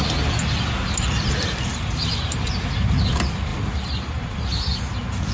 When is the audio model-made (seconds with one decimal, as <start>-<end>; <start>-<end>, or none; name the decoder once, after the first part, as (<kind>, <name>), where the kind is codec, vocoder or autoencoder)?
1.7-2.5 (vocoder, BigVGAN v2); 3.5-4.8